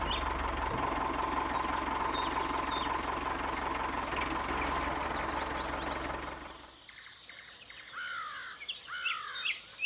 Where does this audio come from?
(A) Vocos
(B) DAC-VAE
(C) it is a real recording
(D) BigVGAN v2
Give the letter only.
C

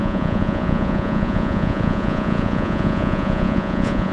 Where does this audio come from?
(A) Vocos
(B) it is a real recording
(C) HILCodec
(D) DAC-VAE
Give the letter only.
A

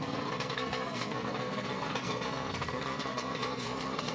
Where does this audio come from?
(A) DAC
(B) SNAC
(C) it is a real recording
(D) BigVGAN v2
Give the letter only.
B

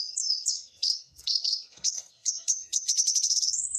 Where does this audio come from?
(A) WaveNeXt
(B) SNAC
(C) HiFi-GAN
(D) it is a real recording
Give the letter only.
B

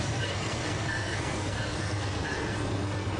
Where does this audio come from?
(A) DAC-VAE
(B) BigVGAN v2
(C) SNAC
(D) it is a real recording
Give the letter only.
C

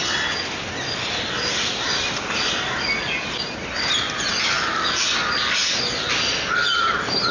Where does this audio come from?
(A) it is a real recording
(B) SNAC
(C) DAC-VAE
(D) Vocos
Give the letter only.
A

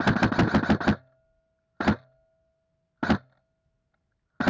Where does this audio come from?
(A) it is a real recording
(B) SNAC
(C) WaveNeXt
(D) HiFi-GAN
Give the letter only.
A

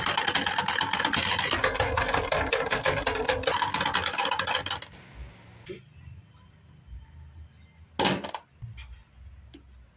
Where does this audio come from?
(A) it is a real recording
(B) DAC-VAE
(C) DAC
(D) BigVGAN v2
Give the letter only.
A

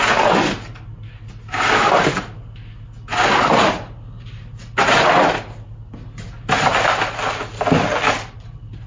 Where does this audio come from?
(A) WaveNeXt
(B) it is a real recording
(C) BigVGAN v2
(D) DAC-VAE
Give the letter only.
B